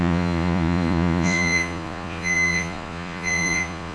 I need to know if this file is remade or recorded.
remade